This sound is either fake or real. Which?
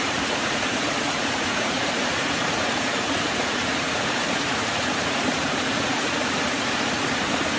fake